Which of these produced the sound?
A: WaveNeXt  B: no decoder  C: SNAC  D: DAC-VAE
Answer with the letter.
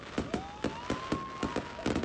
B